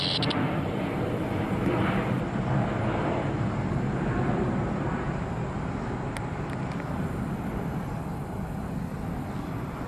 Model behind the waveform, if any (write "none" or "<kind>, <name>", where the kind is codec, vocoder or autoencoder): none